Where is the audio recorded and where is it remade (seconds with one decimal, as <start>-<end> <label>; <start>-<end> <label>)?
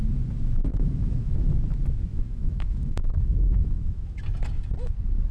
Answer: 0.0-0.7 recorded; 0.7-1.3 remade; 1.3-2.1 recorded; 2.1-4.2 remade; 4.2-5.3 recorded